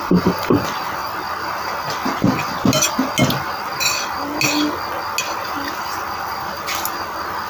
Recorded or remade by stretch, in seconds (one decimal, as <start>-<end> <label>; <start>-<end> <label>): 0.0-7.5 recorded

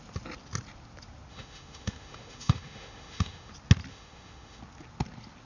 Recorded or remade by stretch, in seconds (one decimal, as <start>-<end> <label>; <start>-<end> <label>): 0.0-1.3 recorded; 1.3-3.5 remade; 3.5-3.9 recorded; 3.9-4.6 remade; 4.6-5.5 recorded

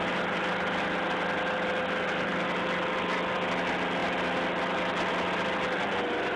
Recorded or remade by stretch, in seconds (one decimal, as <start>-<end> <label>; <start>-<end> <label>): 0.0-6.4 recorded

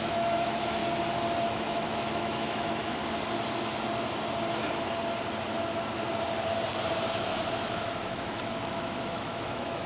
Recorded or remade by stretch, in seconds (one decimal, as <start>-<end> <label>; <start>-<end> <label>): 0.0-0.8 remade; 0.8-1.5 recorded; 1.5-3.0 remade; 3.0-7.2 recorded; 7.2-9.9 remade